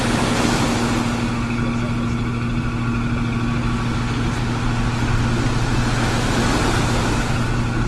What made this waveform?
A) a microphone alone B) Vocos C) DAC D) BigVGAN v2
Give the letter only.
A